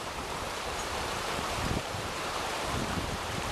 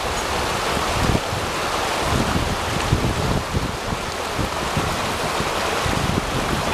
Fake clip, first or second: first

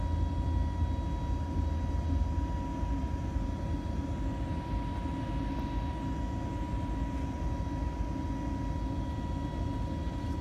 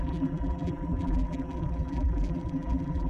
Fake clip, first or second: second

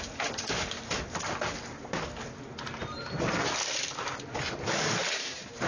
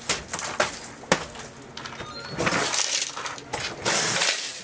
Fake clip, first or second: first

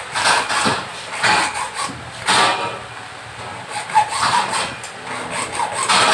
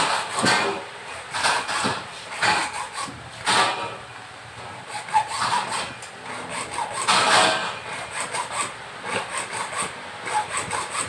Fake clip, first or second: second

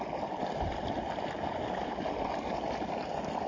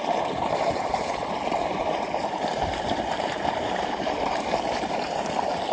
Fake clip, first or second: second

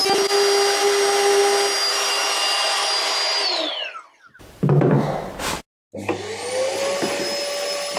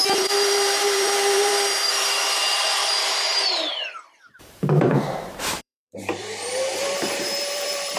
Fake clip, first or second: second